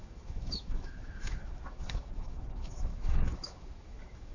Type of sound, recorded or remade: remade